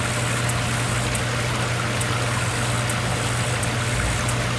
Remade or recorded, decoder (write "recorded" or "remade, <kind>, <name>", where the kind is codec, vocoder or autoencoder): recorded